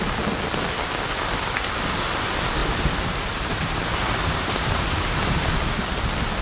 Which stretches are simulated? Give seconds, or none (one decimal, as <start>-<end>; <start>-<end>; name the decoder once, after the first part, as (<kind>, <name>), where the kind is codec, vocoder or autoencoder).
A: 2.6-5.5 (vocoder, BigVGAN v2)